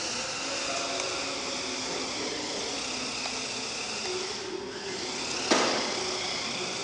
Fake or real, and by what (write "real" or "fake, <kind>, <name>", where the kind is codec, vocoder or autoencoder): real